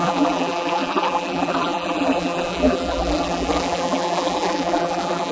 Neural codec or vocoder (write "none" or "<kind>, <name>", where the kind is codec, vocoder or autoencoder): vocoder, BigVGAN v2